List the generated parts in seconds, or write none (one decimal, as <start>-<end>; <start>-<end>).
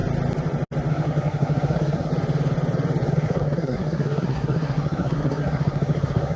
0.9-2.1; 3.1-6.4